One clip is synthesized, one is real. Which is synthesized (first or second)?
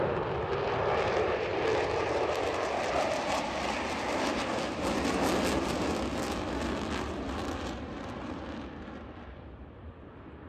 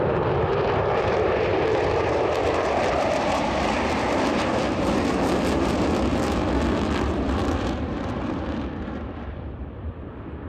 second